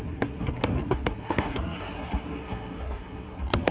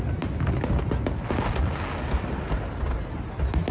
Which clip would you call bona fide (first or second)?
second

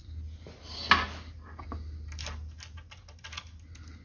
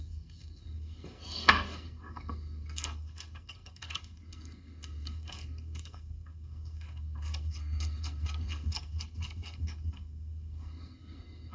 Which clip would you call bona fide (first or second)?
first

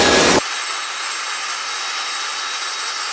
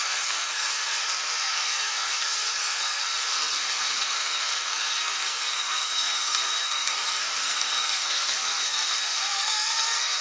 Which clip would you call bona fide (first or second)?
first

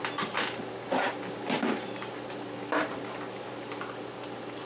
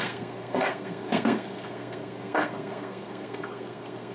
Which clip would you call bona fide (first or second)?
first